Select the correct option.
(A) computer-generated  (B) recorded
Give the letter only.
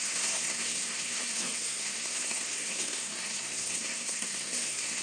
A